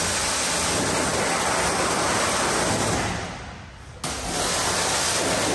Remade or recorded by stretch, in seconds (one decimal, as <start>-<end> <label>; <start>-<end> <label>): 0.0-5.5 recorded